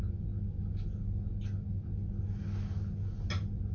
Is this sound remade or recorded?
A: recorded